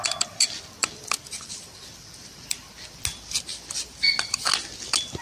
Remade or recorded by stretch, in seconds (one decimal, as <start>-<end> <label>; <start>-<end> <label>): 0.0-0.8 recorded; 0.8-2.7 remade; 2.7-5.2 recorded